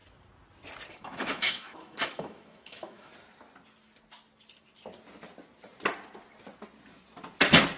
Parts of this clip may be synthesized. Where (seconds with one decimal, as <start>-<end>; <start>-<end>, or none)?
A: 0.9-3.1